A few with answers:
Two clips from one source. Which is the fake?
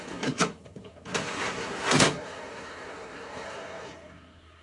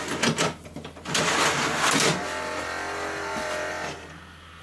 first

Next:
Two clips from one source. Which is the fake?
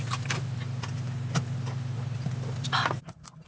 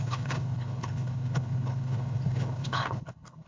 second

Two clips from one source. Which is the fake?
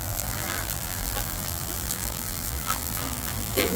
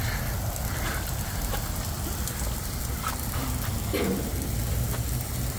first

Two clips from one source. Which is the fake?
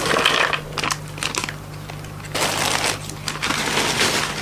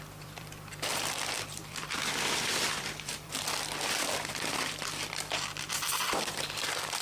second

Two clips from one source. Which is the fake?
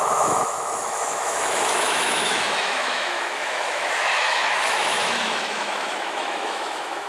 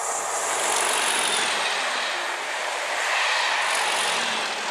first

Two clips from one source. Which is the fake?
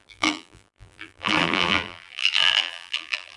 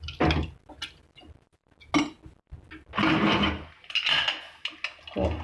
first